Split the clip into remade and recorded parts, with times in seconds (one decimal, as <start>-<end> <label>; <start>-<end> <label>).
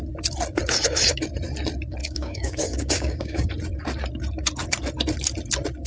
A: 0.0-2.0 recorded; 2.0-3.5 remade; 3.5-5.9 recorded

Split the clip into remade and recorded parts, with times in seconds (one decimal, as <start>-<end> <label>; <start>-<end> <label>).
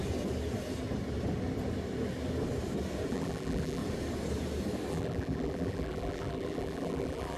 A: 0.0-3.1 recorded; 3.1-3.8 remade; 3.8-4.9 recorded; 4.9-7.4 remade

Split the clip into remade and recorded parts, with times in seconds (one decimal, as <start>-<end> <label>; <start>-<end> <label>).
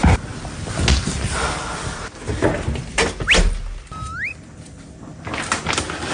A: 0.0-6.1 recorded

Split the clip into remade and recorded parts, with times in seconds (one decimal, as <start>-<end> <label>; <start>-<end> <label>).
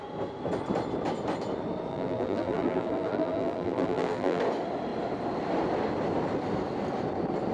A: 0.0-1.9 recorded; 1.9-4.4 remade; 4.4-7.5 recorded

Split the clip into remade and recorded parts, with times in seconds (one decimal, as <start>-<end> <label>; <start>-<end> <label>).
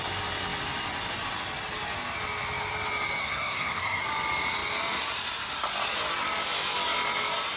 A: 0.0-3.2 recorded; 3.2-4.0 remade; 4.0-7.6 recorded